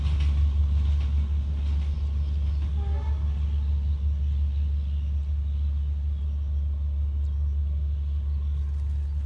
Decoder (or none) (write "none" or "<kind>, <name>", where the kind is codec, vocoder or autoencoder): none